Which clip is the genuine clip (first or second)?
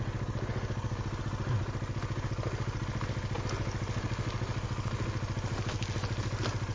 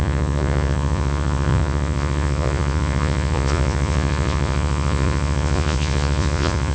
first